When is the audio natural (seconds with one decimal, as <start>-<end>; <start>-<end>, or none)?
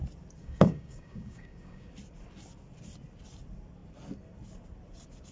0.0-0.4; 1.9-5.3